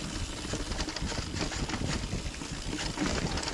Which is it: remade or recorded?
recorded